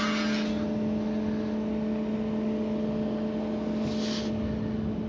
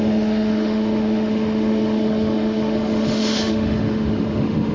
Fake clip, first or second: second